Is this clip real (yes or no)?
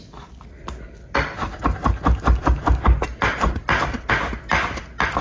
yes